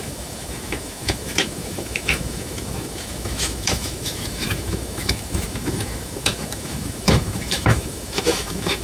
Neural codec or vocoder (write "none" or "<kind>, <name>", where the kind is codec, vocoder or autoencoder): autoencoder, DAC-VAE